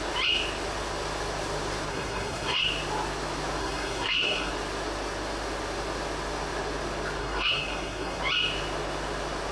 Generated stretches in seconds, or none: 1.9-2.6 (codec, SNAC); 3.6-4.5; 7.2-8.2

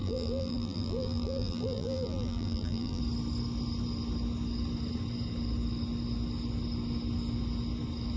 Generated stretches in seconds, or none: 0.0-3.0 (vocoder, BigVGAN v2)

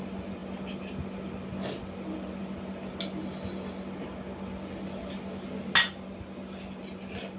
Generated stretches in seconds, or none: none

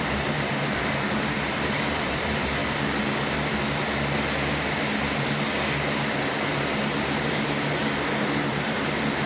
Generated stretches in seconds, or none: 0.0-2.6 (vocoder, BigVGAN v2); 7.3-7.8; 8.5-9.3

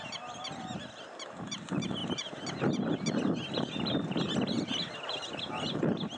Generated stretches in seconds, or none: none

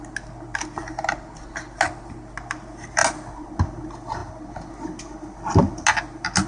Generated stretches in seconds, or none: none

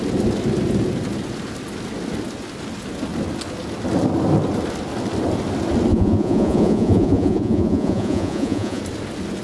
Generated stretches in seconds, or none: 5.9-8.8 (vocoder, Vocos)